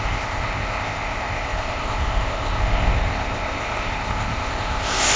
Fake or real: fake